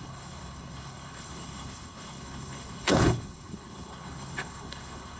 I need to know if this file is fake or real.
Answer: fake